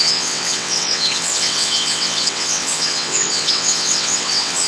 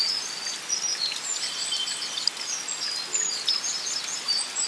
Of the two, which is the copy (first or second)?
first